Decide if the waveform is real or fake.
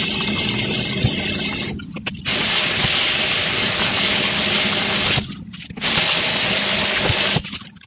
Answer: real